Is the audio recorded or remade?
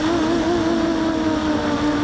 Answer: recorded